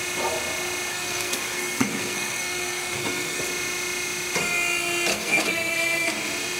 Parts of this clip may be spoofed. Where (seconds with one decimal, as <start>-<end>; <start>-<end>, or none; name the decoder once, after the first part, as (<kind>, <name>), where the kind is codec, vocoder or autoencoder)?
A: 0.9-3.4 (codec, SNAC); 5.1-6.1

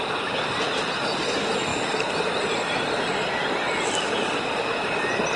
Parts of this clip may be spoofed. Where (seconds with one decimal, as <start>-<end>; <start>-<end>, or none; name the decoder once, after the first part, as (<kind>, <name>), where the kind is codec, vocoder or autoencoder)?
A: none

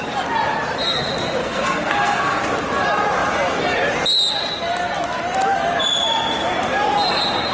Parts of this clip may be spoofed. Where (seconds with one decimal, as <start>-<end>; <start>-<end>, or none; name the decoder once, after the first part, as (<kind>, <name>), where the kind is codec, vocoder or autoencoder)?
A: 1.4-2.4 (codec, SNAC)

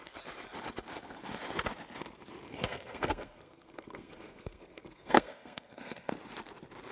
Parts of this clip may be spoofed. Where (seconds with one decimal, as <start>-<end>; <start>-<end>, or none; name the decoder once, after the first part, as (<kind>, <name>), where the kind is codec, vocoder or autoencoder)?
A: 2.5-6.1 (codec, SNAC)

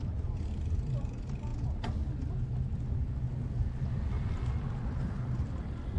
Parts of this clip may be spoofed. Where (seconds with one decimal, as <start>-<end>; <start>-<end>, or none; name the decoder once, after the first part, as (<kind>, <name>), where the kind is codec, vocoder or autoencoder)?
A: none

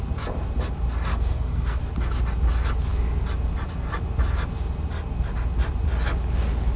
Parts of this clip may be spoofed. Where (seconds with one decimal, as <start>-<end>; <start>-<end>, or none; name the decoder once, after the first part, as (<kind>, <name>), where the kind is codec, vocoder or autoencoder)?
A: 1.1-1.8 (codec, SNAC)

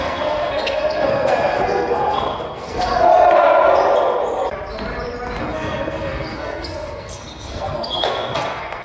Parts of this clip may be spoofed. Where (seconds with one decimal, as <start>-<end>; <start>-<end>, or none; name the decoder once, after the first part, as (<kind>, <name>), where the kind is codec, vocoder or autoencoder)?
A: 0.0-3.1 (codec, SNAC); 5.4-8.8